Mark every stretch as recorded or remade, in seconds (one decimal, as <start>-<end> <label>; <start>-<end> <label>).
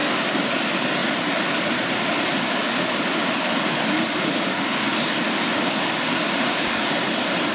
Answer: 0.0-0.5 remade; 0.5-7.5 recorded